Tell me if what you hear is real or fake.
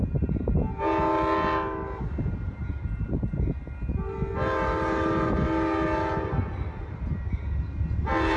real